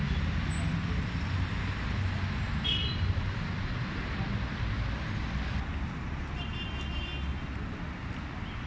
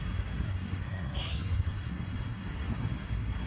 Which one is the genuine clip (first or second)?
first